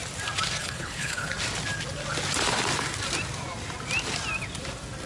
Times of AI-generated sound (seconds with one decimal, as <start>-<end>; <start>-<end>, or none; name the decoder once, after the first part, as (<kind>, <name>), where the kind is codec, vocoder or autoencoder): 0.6-1.3 (codec, HILCodec)